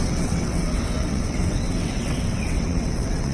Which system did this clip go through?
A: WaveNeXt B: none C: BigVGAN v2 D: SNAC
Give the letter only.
A